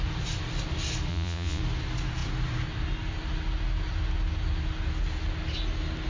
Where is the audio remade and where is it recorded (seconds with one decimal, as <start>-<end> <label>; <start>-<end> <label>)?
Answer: 0.0-1.1 recorded; 1.1-1.6 remade; 1.6-6.1 recorded